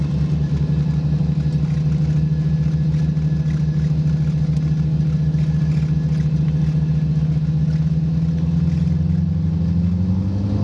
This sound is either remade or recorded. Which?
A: recorded